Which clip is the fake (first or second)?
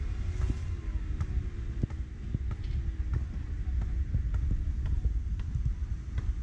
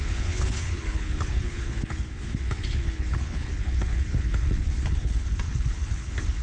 second